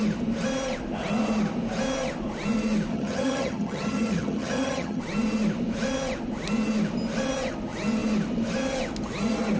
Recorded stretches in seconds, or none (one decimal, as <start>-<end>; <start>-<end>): 0.0-2.9; 5.0-9.6